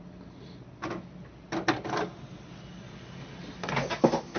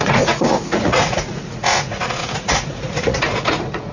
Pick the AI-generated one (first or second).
second